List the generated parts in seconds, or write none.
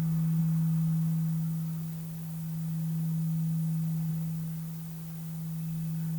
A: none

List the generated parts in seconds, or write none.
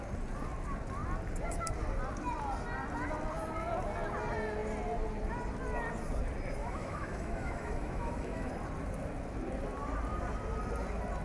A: 6.6-8.5 (autoencoder, DAC-VAE)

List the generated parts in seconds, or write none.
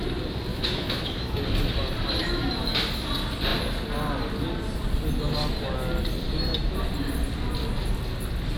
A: 0.5-1.4 (autoencoder, DAC-VAE)